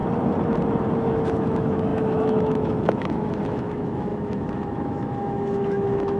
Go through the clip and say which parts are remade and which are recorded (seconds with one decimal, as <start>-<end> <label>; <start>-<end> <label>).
0.0-0.9 recorded; 0.9-6.2 remade